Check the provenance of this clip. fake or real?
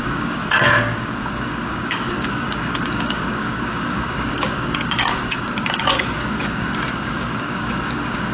fake